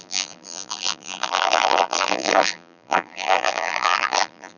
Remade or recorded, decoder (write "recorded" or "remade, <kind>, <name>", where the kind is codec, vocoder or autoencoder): remade, vocoder, BigVGAN v2